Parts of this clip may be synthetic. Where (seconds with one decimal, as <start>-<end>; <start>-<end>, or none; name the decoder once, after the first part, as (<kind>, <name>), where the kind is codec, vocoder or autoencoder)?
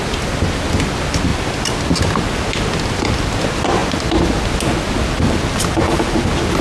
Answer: none